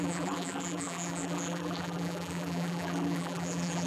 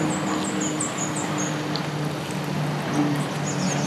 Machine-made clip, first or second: first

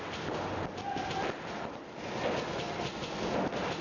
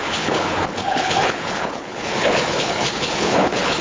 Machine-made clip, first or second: second